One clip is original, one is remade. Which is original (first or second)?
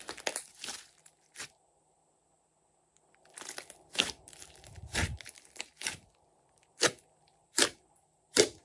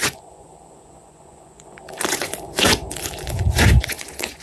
first